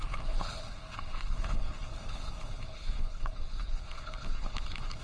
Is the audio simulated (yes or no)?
yes